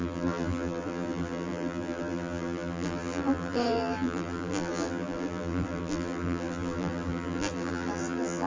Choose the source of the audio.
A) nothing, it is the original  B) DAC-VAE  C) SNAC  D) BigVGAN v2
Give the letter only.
D